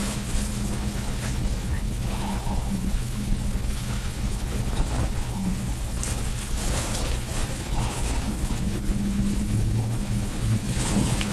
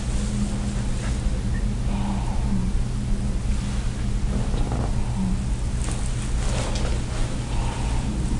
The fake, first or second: first